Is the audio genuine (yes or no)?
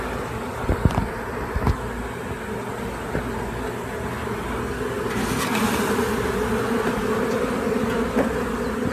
yes